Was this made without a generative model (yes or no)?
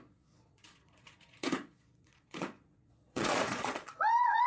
no